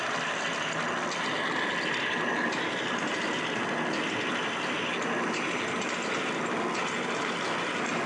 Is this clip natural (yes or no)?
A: yes